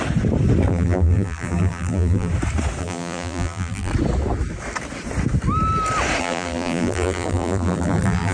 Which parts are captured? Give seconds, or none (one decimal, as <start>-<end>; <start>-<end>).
0.0-0.7; 2.3-2.8; 3.9-6.2